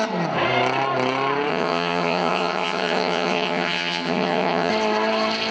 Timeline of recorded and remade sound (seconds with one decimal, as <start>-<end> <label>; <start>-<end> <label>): 0.0-1.5 recorded; 1.5-4.7 remade; 4.7-5.5 recorded